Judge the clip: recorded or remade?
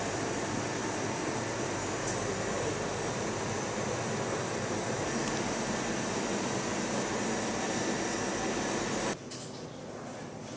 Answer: recorded